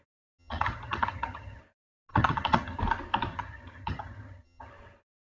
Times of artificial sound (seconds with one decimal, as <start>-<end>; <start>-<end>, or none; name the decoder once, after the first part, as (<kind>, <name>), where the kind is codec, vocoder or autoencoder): 0.4-1.6 (vocoder, HiFi-GAN); 2.1-2.8; 3.3-4.7